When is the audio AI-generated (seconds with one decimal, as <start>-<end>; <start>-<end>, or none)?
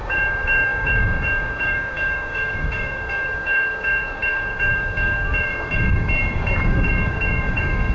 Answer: 0.0-7.9